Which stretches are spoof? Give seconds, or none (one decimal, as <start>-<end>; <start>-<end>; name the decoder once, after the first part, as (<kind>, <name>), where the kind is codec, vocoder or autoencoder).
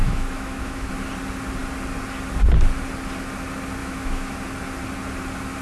0.0-0.9 (autoencoder, DAC-VAE); 3.8-4.4